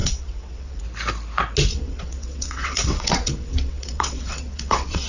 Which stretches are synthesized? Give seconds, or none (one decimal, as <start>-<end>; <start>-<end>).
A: 0.0-0.8; 1.7-5.1